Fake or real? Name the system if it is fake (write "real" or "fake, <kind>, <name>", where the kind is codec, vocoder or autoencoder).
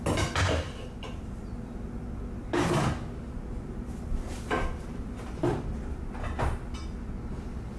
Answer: real